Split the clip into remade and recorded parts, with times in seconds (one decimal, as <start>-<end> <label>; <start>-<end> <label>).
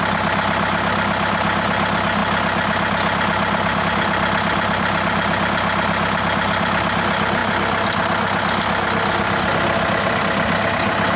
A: 0.0-11.2 recorded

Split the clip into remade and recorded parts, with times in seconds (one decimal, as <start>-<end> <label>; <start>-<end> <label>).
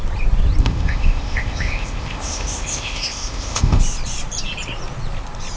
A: 0.0-0.6 recorded; 0.6-3.8 remade; 3.8-5.6 recorded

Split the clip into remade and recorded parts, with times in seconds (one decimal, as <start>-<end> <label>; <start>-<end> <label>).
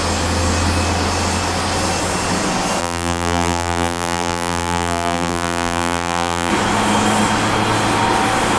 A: 0.0-2.8 recorded; 2.8-6.5 remade; 6.5-8.6 recorded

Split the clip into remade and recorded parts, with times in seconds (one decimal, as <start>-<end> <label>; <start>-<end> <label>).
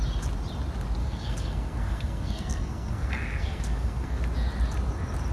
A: 0.0-1.0 recorded; 1.0-4.2 remade; 4.2-5.3 recorded